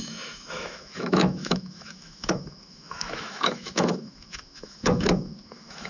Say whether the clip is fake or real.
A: fake